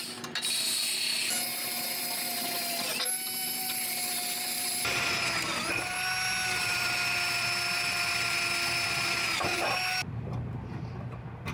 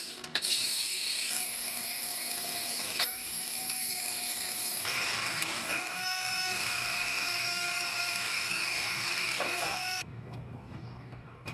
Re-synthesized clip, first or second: second